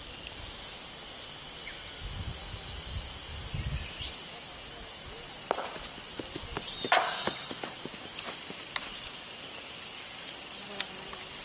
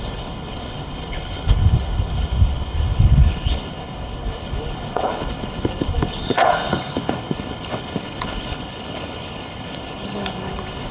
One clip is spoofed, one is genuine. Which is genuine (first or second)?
first